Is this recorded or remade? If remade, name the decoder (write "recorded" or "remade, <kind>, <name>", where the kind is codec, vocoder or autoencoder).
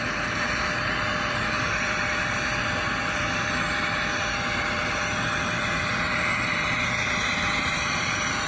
remade, vocoder, BigVGAN v2